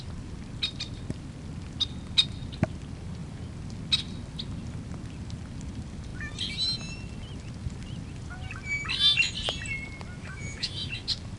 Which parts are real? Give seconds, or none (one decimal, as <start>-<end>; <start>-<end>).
0.0-10.2; 10.9-11.4

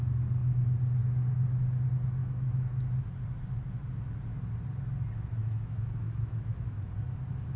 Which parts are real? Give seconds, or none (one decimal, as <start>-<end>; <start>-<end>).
0.0-2.2; 2.9-5.4; 6.8-7.6